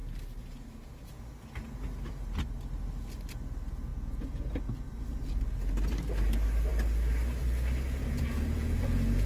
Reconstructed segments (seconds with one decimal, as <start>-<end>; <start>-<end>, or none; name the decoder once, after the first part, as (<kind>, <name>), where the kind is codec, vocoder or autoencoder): 3.9-4.5 (vocoder, Vocos); 8.0-9.3